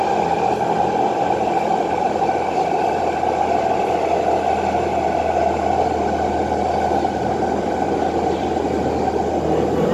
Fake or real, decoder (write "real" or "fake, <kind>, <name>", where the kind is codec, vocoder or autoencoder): real